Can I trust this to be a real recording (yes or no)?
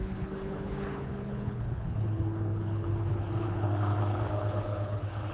no